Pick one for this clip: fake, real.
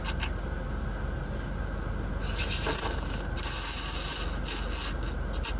real